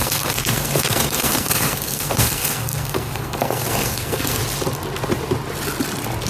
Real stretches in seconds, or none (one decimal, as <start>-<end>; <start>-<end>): 4.4-6.3